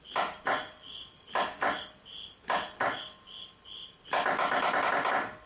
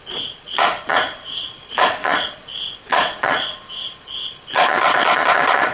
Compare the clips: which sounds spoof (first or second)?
second